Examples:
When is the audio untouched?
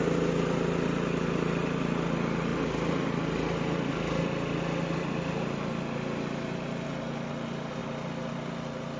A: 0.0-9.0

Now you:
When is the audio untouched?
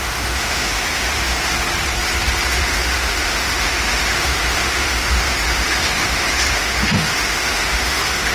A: 1.4-2.5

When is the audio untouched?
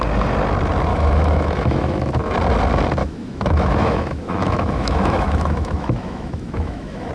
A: 0.0-0.9; 2.3-3.0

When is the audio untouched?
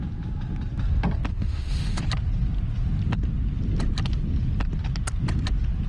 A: 0.0-1.3; 2.0-5.9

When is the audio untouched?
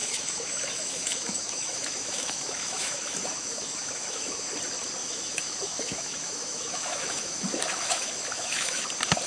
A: 4.5-5.0; 8.8-9.3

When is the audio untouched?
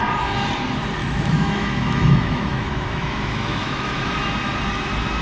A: 0.0-1.0; 4.1-5.2